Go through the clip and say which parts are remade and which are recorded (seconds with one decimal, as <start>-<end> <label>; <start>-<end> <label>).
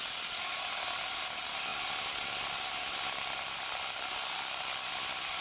0.0-5.4 recorded